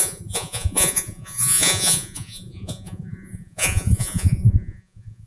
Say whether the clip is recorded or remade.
remade